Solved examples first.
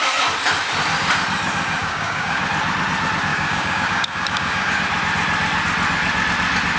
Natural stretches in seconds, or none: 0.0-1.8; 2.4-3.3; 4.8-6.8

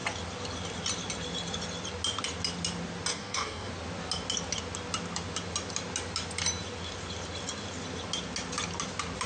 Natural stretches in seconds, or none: 0.0-3.1; 3.7-9.3